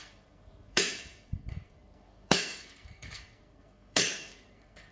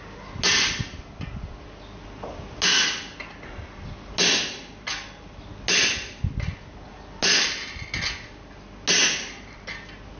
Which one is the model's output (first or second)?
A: first